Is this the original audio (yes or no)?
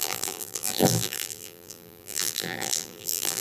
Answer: no